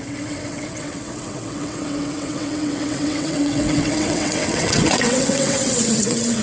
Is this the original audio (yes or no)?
no